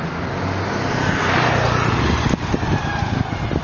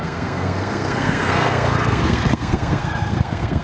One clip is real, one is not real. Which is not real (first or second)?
second